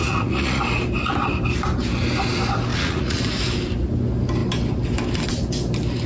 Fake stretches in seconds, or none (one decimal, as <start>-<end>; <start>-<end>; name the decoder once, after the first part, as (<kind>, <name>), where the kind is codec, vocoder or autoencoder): 0.0-0.6 (vocoder, Vocos); 2.7-3.2